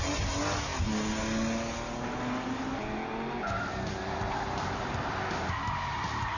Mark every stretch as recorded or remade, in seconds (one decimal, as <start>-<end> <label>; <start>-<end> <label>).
0.0-6.4 recorded